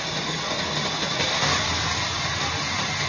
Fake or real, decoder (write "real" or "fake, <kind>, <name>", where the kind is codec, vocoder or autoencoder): real